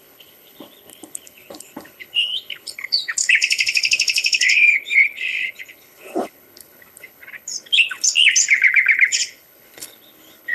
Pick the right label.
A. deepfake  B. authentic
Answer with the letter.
A